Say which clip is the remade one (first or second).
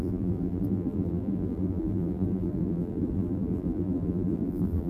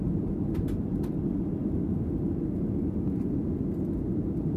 first